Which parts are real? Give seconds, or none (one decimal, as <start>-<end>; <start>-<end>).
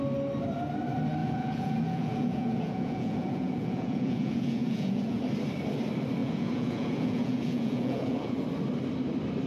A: 0.0-1.2; 5.2-6.2; 8.4-9.5